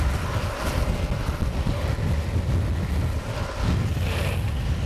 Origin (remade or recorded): recorded